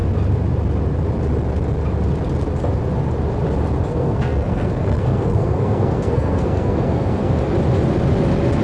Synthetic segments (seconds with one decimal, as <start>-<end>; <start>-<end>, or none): 3.9-7.3

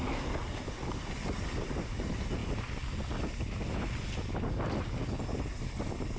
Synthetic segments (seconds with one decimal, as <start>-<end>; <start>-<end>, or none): none

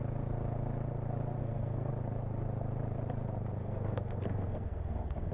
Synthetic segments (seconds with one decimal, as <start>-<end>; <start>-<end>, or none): 1.4-1.9; 3.6-5.3

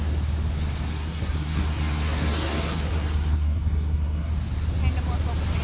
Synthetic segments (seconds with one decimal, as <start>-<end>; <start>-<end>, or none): 0.9-4.3